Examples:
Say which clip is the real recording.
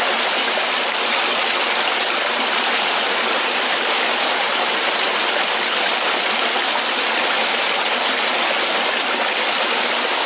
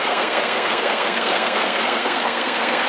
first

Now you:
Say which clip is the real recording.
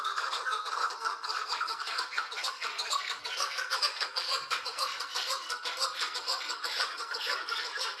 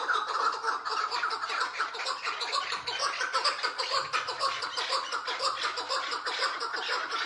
second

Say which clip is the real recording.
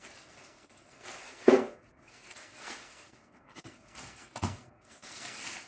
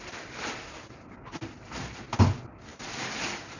second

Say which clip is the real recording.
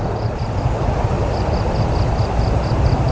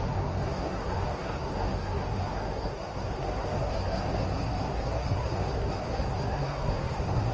first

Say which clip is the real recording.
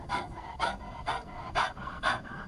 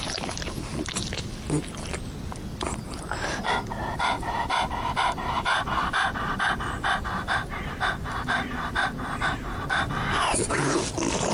second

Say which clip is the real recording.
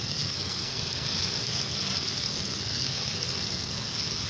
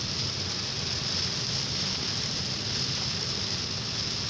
second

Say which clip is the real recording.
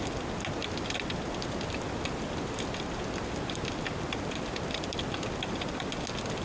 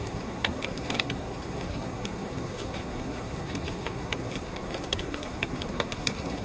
first